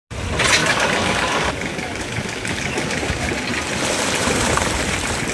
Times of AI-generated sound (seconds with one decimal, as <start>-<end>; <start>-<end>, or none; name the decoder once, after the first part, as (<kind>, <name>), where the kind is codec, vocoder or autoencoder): 0.6-3.3 (codec, DAC)

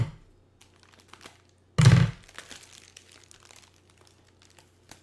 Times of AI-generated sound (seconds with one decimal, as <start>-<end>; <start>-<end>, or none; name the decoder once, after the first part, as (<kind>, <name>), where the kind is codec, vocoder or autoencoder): none

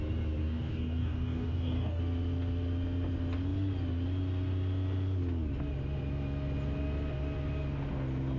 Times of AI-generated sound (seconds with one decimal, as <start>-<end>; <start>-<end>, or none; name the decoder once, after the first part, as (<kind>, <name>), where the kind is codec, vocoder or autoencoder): 0.4-2.0 (codec, DAC)

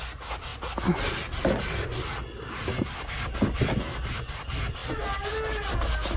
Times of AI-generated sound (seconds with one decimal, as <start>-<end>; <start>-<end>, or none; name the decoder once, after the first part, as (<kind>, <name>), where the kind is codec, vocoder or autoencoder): none

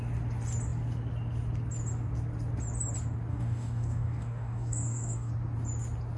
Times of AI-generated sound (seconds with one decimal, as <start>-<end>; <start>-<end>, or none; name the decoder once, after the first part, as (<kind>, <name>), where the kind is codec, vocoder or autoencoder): 3.3-5.3 (codec, DAC)